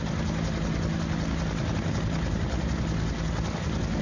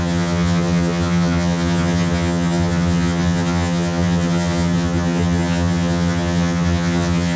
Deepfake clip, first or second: second